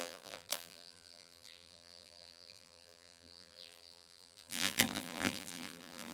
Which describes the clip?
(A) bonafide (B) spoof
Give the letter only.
B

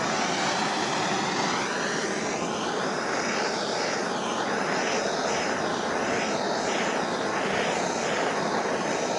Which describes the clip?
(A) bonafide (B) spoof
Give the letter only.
A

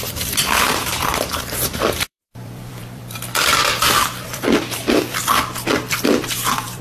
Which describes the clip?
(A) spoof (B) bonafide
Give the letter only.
A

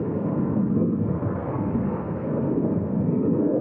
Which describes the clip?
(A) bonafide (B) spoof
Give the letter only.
B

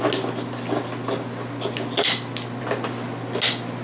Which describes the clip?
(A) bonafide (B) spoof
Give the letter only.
A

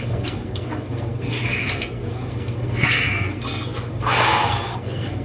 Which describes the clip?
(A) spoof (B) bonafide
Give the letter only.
A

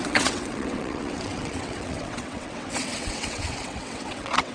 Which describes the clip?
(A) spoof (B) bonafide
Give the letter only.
A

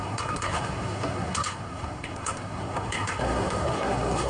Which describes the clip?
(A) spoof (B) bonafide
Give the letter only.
A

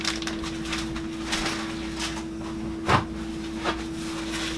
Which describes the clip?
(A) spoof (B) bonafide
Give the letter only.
B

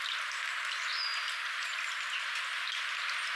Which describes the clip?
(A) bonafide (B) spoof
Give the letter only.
A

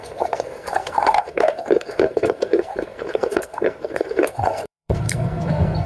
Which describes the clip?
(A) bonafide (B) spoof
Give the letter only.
B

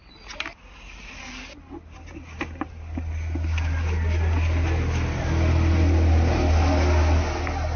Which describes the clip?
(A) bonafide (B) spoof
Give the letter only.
A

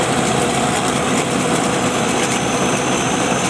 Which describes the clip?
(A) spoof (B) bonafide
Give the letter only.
A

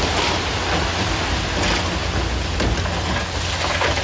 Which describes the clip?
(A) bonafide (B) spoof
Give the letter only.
A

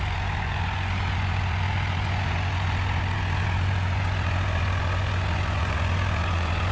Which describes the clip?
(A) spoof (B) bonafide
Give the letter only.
A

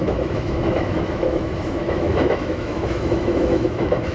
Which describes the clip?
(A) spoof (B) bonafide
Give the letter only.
A